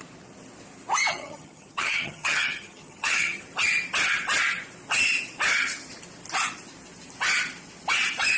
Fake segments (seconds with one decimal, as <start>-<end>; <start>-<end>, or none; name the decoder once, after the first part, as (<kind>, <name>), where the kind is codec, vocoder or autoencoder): 1.1-3.4 (vocoder, HiFi-GAN)